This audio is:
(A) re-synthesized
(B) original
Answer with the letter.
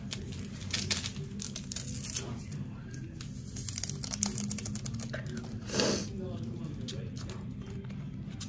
B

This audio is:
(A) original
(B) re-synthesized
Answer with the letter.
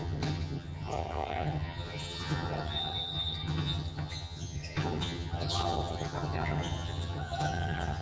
B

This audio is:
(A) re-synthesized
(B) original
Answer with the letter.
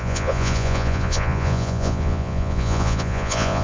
A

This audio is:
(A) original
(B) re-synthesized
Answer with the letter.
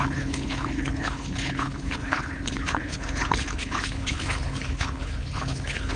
B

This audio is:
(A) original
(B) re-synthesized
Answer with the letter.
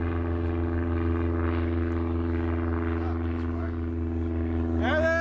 A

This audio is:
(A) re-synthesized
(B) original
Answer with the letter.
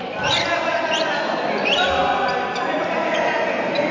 B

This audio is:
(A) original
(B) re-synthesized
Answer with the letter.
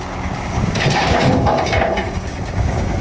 B